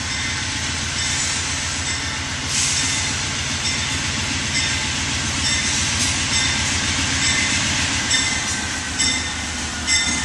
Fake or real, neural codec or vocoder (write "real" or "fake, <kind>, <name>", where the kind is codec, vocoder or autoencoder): real